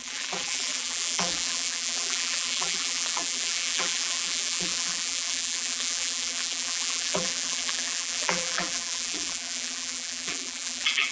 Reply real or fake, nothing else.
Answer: fake